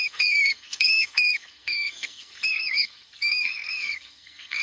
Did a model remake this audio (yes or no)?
yes